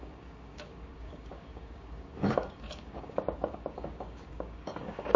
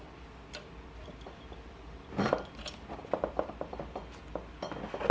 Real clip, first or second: second